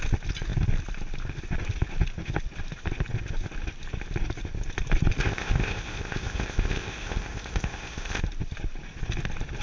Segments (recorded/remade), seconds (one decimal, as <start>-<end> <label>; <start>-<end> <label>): 0.0-5.2 recorded; 5.2-8.2 remade; 8.2-9.6 recorded